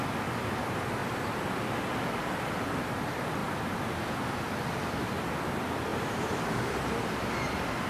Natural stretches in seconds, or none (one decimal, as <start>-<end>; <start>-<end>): 0.0-5.9; 6.9-7.9